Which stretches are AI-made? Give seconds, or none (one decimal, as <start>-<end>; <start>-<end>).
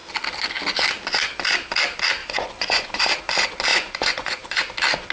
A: 2.2-3.2; 3.7-4.6